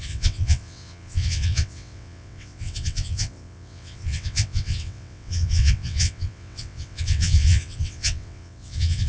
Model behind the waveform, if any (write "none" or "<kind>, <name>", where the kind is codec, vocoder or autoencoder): vocoder, WaveNeXt